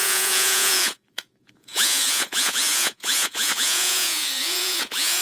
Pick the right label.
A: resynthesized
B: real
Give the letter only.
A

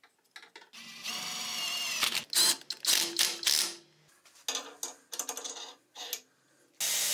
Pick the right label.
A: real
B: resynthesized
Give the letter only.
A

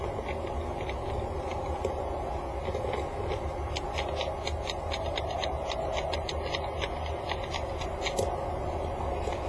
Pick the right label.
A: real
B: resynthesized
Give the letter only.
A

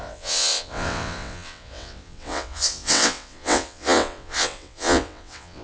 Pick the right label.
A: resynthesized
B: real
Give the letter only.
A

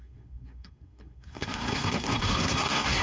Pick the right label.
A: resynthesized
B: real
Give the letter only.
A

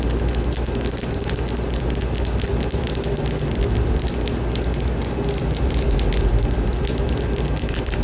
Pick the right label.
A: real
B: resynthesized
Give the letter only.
A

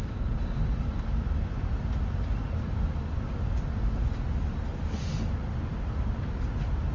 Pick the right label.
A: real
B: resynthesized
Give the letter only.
A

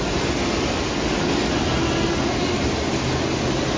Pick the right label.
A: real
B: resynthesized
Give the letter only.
A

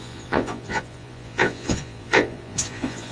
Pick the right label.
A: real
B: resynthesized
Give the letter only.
B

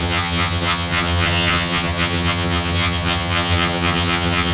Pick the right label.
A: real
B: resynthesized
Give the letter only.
B